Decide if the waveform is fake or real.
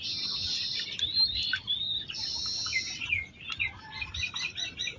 real